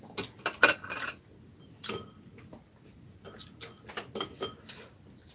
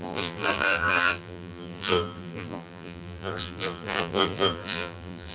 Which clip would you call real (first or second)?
first